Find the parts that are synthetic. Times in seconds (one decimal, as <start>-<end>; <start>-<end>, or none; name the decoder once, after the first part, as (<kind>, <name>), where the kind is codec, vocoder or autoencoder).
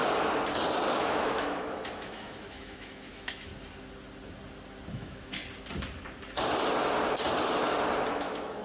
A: 0.9-3.5 (autoencoder, DAC-VAE); 4.9-5.4; 8.1-8.6